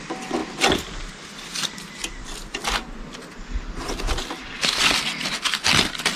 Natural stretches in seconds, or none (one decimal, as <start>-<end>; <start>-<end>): 0.0-6.2

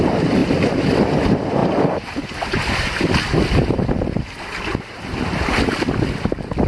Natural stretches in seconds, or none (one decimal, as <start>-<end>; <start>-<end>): 0.0-6.7

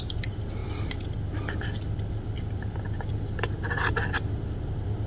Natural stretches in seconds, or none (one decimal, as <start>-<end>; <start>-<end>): 0.0-5.1

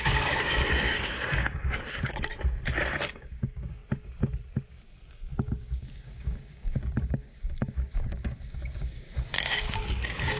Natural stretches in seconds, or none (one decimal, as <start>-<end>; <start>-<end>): 2.3-3.0; 3.8-4.7

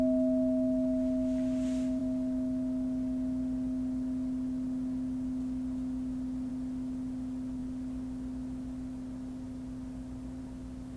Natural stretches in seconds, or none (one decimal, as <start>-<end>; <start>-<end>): 0.0-11.0

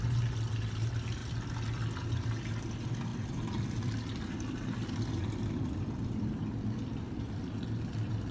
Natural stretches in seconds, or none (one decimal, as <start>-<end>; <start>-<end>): 0.0-3.1

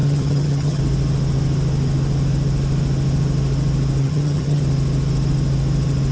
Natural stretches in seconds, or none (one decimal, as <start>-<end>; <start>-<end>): 0.8-4.0; 4.6-6.1